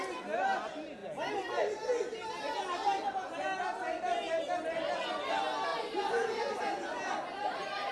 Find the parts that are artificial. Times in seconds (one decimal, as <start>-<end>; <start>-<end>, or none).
5.7-6.6